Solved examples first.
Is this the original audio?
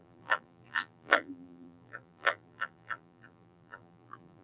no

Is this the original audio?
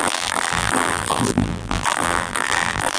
no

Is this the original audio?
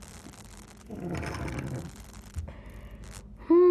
yes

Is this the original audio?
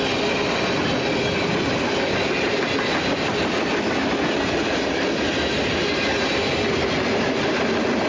yes